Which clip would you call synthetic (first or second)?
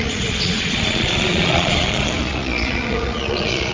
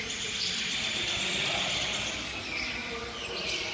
first